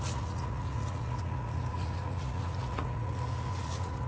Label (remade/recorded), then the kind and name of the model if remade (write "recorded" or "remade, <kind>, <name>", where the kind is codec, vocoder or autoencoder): remade, vocoder, Vocos